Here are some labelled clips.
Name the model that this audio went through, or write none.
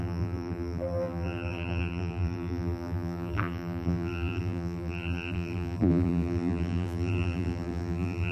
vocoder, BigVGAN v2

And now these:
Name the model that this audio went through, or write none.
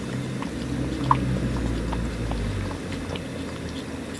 none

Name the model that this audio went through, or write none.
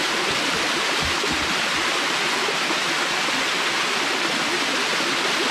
none